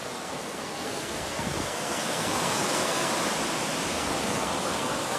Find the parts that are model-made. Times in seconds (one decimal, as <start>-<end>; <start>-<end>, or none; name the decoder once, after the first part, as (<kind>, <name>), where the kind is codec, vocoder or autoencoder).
0.0-3.1 (codec, SNAC); 3.9-5.2